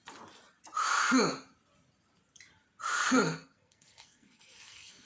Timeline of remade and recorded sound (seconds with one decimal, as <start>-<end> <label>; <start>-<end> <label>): 0.0-3.1 recorded; 3.1-5.1 remade